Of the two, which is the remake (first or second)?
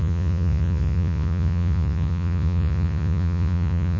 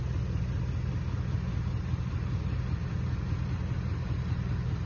first